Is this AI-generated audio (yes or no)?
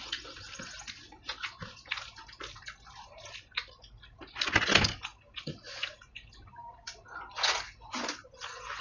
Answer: no